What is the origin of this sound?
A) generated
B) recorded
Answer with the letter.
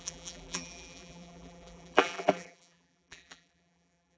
A